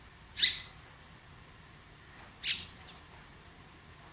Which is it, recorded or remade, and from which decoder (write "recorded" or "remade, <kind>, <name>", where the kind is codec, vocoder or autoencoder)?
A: recorded